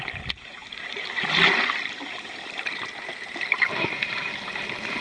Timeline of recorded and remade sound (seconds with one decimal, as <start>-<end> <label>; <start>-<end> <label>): 0.0-5.0 recorded